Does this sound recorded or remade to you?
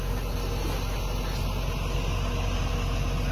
recorded